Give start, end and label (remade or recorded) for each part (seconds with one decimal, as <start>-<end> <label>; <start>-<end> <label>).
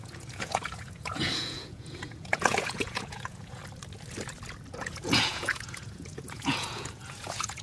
0.0-3.6 remade; 3.6-4.8 recorded; 4.8-7.6 remade